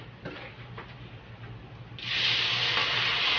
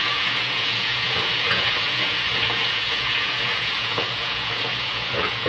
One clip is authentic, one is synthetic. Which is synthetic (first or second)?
second